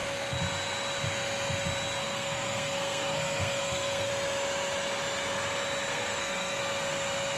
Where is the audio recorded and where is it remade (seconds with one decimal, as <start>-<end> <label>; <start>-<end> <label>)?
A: 0.0-2.0 recorded; 2.0-4.1 remade; 4.1-5.9 recorded; 5.9-6.6 remade; 6.6-7.4 recorded